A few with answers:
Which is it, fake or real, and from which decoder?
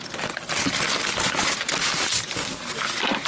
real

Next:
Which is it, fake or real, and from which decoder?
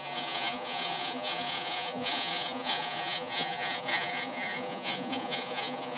fake, vocoder, Vocos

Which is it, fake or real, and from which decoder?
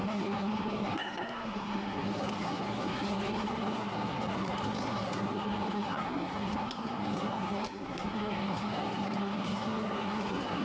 fake, codec, SNAC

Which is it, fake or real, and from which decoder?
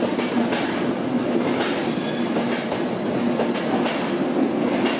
real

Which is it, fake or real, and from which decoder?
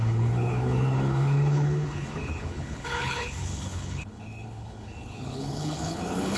fake, codec, HILCodec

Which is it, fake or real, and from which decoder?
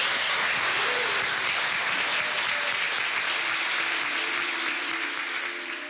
real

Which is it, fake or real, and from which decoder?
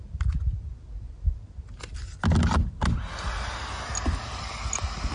real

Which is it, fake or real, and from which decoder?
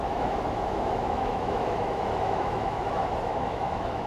fake, autoencoder, DAC-VAE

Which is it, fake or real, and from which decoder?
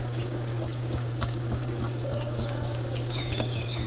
fake, codec, DAC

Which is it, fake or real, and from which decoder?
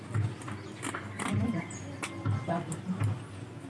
real